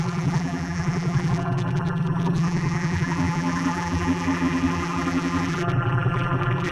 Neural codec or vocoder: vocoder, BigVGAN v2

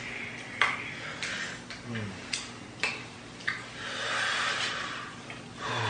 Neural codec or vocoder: none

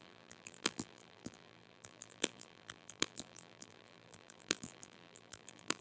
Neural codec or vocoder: vocoder, BigVGAN v2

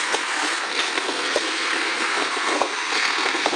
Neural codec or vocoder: codec, SNAC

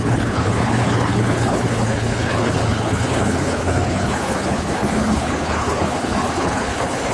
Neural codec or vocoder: codec, HILCodec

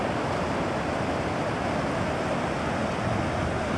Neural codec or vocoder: none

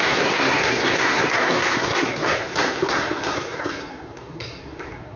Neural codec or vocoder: codec, SNAC